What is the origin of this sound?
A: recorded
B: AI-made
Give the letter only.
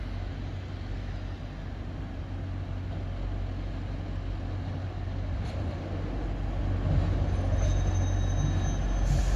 A